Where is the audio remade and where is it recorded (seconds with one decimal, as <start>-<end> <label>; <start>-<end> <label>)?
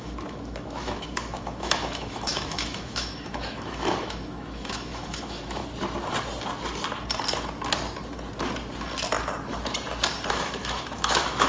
0.0-5.6 remade; 5.6-10.3 recorded; 10.3-11.5 remade